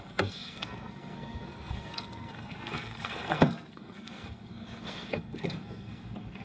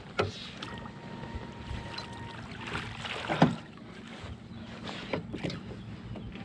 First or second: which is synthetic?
first